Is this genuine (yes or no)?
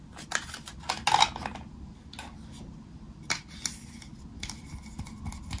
yes